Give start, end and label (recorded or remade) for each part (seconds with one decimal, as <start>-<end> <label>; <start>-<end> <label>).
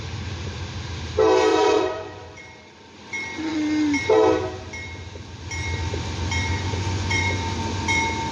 0.0-1.5 recorded; 1.5-2.4 remade; 2.4-6.5 recorded; 6.5-7.3 remade; 7.3-8.3 recorded